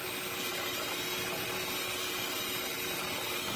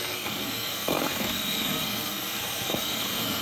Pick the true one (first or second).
first